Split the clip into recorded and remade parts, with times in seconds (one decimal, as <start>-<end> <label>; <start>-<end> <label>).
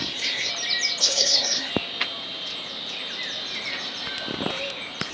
0.0-0.5 remade; 0.5-1.0 recorded; 1.0-1.7 remade; 1.7-5.1 recorded